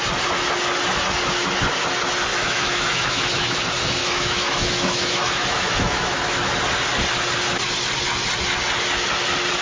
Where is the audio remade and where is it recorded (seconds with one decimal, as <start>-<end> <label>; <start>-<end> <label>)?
0.0-2.3 recorded; 2.3-3.6 remade; 3.6-4.0 recorded; 4.0-6.5 remade; 6.5-9.6 recorded

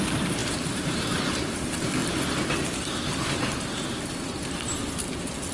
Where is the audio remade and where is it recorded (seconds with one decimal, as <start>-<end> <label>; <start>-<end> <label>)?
0.0-0.4 recorded; 0.4-1.0 remade; 1.0-5.5 recorded

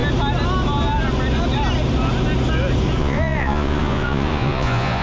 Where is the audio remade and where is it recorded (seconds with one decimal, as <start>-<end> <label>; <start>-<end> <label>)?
0.0-3.0 recorded; 3.0-5.0 remade